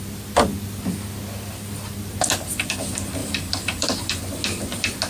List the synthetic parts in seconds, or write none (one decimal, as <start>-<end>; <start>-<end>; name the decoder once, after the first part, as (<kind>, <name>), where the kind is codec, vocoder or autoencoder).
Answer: 3.2-4.2 (vocoder, BigVGAN v2)